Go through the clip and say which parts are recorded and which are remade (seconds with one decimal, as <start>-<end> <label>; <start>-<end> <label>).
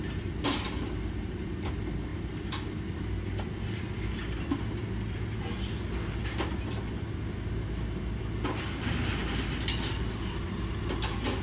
0.0-11.4 recorded